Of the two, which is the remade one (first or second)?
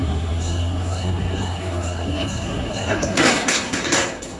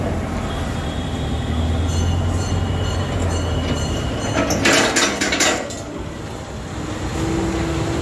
first